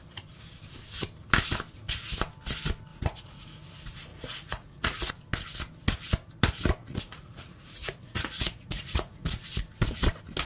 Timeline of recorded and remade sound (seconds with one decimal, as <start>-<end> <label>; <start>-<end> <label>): 0.0-2.9 recorded; 2.9-3.6 remade; 3.6-4.1 recorded; 4.1-5.1 remade; 5.1-6.8 recorded; 6.8-9.4 remade; 9.4-10.5 recorded